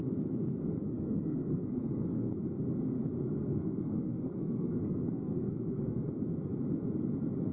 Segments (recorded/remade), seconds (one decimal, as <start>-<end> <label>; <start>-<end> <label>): 0.0-0.9 recorded; 0.9-2.3 remade; 2.3-3.2 recorded; 3.2-6.1 remade; 6.1-7.5 recorded